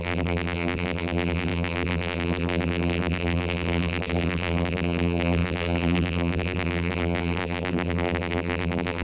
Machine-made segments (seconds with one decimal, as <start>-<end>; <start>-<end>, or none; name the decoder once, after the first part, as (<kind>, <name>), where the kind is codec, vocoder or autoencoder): 0.0-9.0 (vocoder, BigVGAN v2)